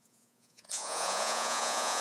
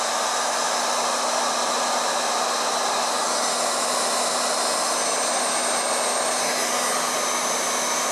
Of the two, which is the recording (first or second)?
second